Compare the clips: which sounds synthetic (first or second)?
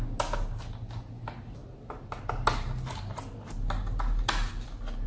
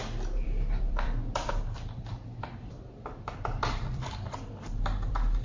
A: second